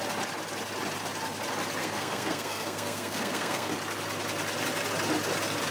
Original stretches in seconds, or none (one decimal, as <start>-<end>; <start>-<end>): 0.0-1.8; 3.7-5.7